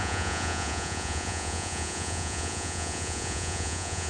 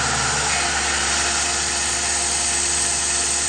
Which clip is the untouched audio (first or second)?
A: second